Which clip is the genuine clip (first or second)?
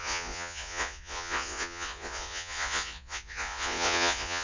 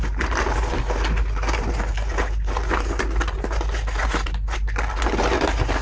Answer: second